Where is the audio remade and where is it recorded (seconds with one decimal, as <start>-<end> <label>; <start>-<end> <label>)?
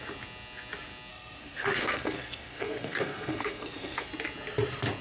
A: 0.0-1.1 recorded; 1.1-4.1 remade; 4.1-5.0 recorded